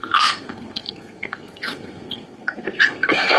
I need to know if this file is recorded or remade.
remade